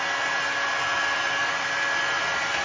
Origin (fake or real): real